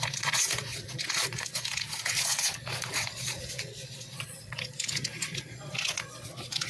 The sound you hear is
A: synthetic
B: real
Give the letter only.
A